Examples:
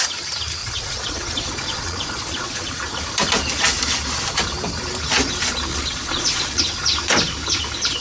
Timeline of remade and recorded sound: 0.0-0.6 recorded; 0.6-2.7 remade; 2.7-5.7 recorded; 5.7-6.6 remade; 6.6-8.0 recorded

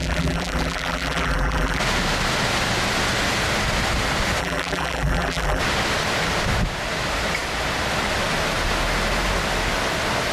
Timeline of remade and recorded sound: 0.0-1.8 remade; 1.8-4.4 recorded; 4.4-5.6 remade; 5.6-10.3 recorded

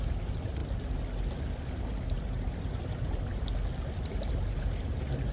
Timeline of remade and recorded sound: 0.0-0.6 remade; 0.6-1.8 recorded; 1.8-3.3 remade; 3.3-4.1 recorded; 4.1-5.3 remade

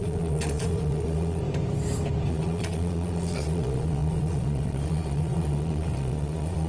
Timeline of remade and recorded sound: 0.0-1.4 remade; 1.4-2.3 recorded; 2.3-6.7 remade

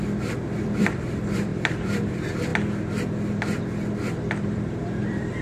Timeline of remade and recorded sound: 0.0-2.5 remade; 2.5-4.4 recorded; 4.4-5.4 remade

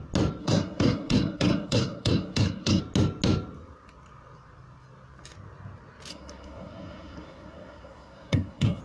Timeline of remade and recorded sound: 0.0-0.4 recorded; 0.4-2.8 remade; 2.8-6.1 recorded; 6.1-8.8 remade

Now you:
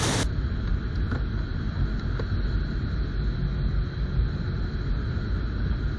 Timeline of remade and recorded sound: 0.0-6.0 recorded